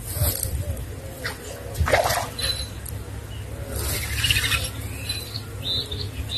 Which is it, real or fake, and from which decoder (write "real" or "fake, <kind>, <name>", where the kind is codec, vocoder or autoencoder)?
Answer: real